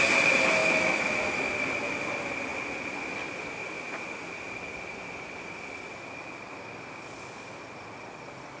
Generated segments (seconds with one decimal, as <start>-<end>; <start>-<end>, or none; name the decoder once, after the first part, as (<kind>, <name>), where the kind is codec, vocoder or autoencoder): 0.6-1.4 (autoencoder, DAC-VAE)